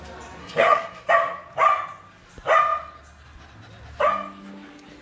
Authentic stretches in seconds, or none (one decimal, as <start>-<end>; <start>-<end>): 0.0-0.4; 1.1-5.0